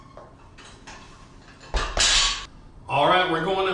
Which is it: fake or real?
real